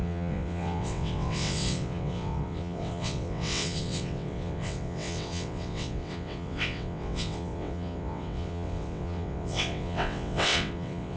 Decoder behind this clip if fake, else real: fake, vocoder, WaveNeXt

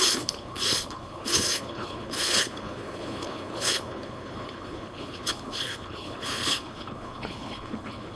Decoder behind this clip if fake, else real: fake, codec, HILCodec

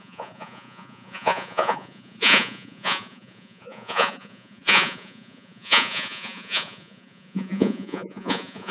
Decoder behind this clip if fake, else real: fake, vocoder, Vocos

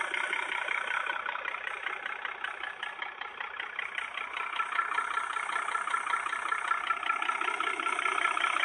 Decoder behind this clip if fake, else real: real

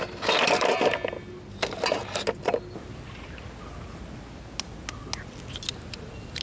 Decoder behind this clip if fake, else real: real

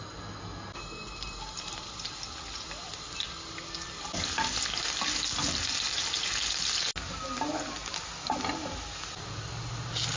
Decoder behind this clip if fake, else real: real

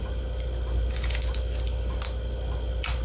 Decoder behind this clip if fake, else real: real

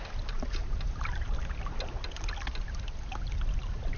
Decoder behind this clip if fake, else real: real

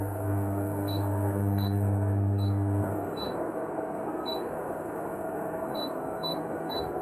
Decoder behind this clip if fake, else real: fake, codec, SNAC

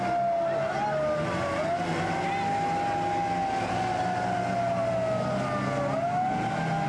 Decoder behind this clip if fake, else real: real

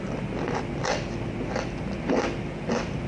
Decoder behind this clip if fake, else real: real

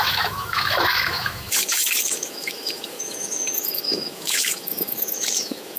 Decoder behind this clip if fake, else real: fake, autoencoder, DAC-VAE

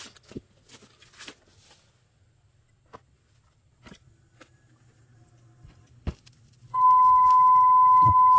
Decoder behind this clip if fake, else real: real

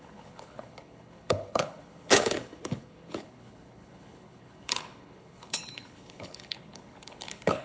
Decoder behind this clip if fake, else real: fake, codec, HILCodec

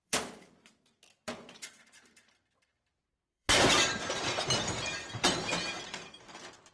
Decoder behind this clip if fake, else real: fake, vocoder, BigVGAN v2